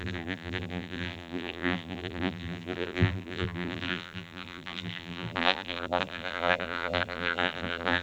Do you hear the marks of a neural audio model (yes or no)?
yes